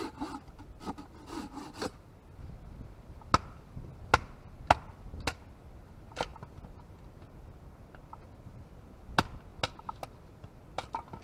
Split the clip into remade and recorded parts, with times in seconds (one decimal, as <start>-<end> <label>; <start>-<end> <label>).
0.0-11.2 recorded

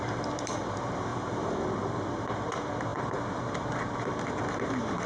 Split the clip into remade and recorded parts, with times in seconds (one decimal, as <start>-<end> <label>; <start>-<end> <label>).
0.0-5.1 remade

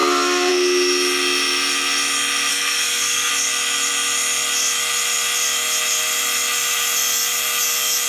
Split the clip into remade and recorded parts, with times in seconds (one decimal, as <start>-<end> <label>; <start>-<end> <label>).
0.0-2.5 recorded; 2.5-3.3 remade; 3.3-8.1 recorded

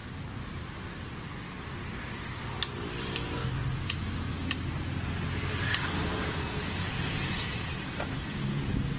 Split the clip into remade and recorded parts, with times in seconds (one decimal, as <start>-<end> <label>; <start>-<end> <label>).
0.0-3.6 recorded; 3.6-4.4 remade; 4.4-6.1 recorded; 6.1-9.0 remade

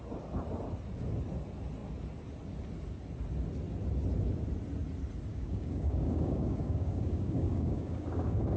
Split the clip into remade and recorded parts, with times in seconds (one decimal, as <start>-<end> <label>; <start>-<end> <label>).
0.0-5.3 recorded; 5.3-8.6 remade